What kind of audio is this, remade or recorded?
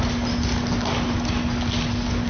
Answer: recorded